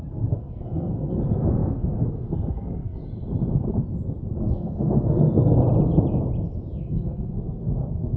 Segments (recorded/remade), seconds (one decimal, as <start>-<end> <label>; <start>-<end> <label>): 0.0-3.0 remade; 3.0-4.4 recorded; 4.4-5.6 remade; 5.6-6.8 recorded; 6.8-8.2 remade